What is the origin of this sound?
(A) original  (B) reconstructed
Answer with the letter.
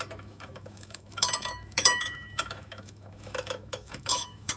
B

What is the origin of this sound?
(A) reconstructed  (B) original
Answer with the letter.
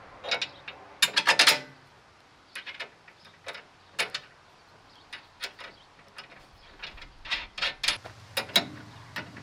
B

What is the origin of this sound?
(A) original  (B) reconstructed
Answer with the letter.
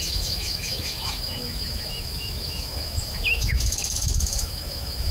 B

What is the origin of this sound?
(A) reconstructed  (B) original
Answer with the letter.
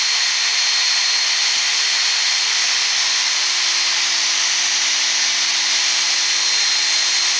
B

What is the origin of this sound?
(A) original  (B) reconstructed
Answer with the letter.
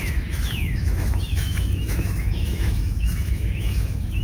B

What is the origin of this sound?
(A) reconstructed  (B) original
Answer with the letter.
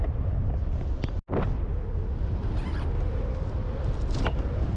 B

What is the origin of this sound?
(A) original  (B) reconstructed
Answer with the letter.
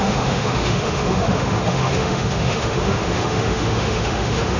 B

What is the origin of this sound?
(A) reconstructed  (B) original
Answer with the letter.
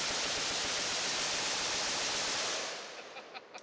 B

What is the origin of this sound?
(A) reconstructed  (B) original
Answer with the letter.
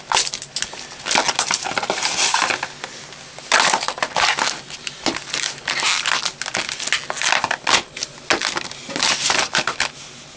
B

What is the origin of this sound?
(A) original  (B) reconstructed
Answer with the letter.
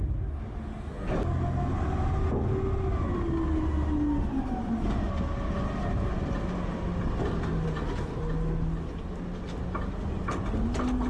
A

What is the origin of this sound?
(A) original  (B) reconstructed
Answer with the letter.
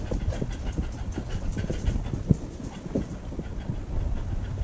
A